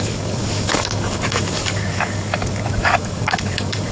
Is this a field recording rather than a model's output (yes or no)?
no